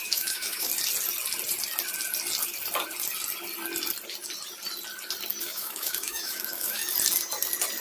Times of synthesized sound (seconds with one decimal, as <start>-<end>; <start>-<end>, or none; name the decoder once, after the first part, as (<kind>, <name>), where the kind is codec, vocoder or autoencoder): 0.0-0.7 (autoencoder, DAC-VAE); 5.4-6.8